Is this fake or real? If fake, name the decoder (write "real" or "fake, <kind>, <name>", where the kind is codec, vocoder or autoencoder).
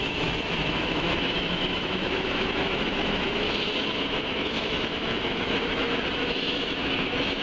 fake, autoencoder, DAC-VAE